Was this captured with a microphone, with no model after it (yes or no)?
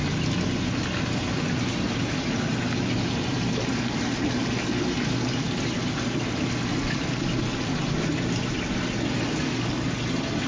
yes